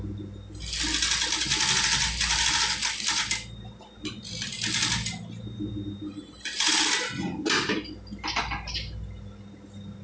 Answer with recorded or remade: recorded